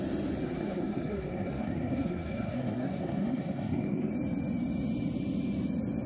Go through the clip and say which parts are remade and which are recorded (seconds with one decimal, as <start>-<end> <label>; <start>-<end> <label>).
0.0-0.4 recorded; 0.4-4.1 remade; 4.1-6.1 recorded